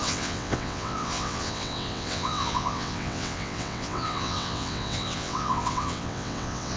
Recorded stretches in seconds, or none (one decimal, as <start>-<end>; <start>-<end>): none